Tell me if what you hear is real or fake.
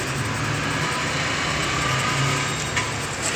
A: real